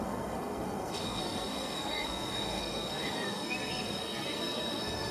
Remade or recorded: remade